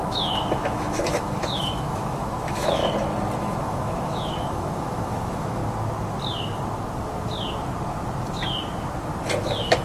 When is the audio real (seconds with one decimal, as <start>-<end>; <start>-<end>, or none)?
2.8-3.4; 5.6-9.4